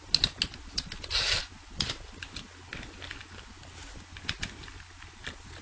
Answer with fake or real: real